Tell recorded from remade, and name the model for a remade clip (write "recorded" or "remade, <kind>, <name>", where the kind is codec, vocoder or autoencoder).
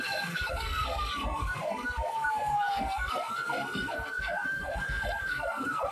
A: remade, codec, SNAC